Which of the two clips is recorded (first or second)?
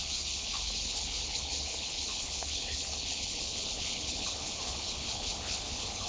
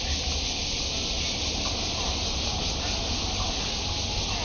second